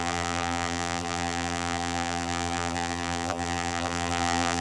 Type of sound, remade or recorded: remade